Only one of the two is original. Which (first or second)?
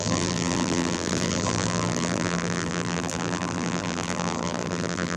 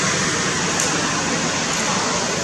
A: second